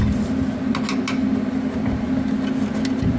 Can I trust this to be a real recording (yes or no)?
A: yes